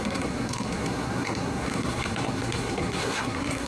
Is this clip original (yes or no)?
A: no